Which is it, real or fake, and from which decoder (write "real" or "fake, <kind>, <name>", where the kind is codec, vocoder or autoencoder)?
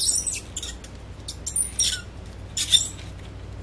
real